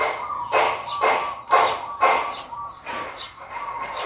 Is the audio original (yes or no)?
yes